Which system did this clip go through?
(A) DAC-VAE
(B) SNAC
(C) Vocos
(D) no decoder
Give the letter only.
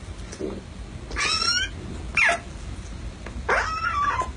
D